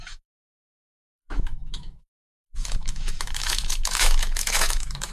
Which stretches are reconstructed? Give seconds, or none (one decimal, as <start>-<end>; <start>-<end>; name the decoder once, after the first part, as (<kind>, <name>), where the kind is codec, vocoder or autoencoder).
0.0-5.1 (autoencoder, DAC-VAE)